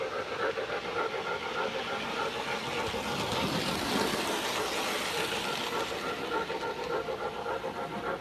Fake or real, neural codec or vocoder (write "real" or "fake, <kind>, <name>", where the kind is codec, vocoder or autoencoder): real